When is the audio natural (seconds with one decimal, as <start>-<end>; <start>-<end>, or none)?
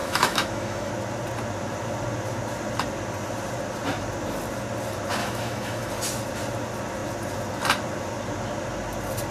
0.9-5.2; 5.9-9.3